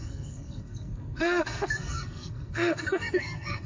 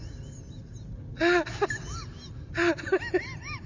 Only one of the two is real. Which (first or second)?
second